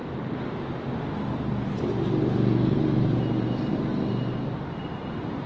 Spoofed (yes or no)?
no